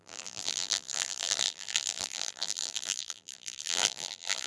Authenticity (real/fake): fake